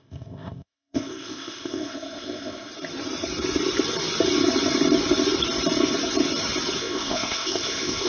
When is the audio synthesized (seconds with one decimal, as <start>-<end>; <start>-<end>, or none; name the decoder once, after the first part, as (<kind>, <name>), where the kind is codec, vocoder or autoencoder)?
0.0-2.7 (codec, ZipCodec); 6.8-8.1